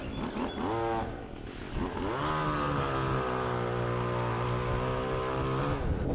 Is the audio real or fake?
real